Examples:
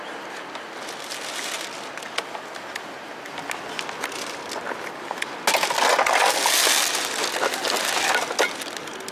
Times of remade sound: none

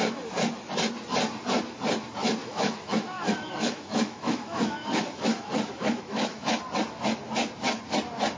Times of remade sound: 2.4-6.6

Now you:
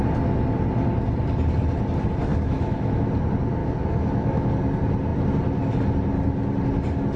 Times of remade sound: 2.3-3.0; 3.6-4.5